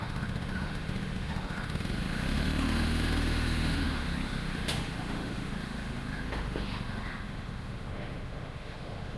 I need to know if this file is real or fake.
fake